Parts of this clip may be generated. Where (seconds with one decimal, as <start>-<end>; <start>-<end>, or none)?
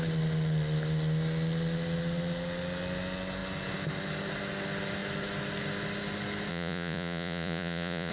6.5-8.1